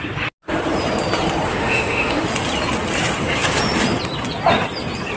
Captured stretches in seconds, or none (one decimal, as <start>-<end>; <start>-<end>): 0.0-1.5; 2.2-5.2